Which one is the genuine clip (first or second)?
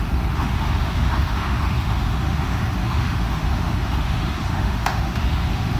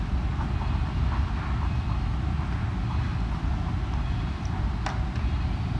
second